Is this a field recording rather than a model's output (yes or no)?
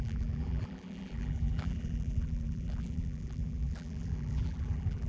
no